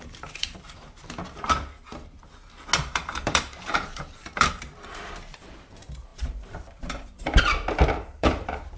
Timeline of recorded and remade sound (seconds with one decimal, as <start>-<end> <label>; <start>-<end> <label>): 0.0-1.2 remade; 1.2-2.9 recorded; 2.9-8.8 remade